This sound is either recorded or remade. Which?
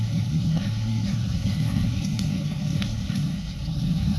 remade